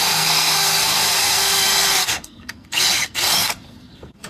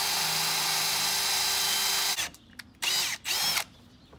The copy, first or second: first